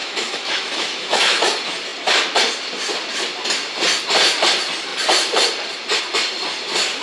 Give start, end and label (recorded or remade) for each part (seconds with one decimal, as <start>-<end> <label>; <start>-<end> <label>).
0.0-1.4 remade; 1.4-7.0 recorded